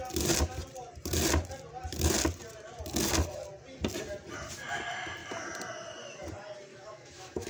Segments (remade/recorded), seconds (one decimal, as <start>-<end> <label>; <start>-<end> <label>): 0.0-6.7 recorded; 6.7-7.5 remade